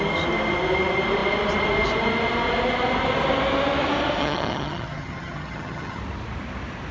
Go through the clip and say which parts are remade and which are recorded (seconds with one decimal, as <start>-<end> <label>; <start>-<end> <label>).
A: 0.0-4.2 recorded; 4.2-6.0 remade; 6.0-6.9 recorded